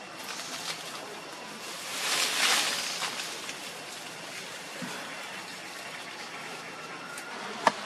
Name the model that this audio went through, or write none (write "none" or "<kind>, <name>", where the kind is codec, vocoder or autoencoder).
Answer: none